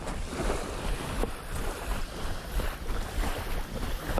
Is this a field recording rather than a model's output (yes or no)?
yes